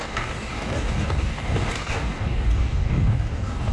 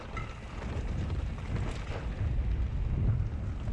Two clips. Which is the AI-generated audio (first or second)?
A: first